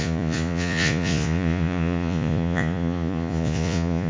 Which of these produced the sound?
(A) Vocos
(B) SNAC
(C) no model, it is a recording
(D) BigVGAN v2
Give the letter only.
A